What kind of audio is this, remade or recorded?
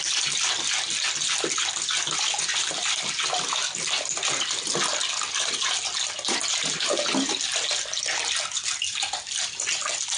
recorded